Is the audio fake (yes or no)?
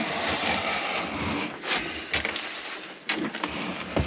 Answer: no